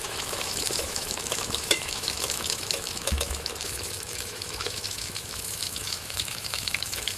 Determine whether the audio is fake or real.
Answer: fake